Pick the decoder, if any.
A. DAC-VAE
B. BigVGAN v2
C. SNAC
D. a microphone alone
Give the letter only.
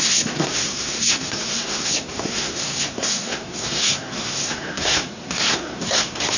C